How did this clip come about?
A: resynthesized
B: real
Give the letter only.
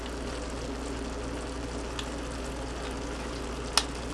B